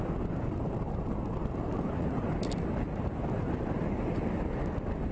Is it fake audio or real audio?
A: real